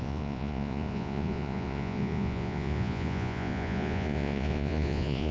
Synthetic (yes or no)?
yes